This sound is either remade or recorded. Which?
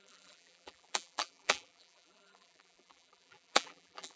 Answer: remade